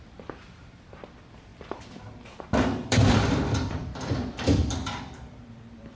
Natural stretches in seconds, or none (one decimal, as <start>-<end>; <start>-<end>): none